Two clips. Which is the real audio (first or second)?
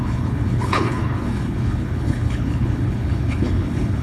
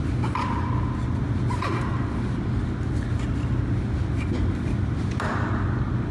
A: second